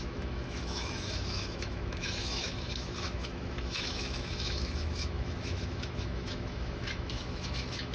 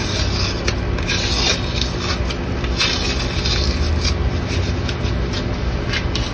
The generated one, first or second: first